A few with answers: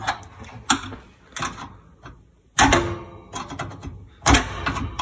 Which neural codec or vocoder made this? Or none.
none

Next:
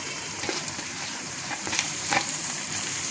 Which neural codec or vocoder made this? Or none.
vocoder, BigVGAN v2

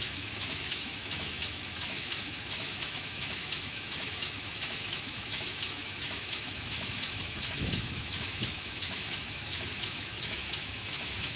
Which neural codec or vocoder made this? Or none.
autoencoder, DAC-VAE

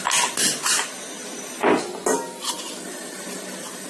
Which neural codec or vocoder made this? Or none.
none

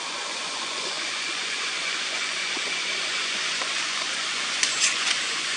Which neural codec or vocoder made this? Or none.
vocoder, Vocos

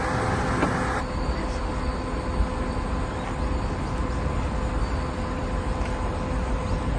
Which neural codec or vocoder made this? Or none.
none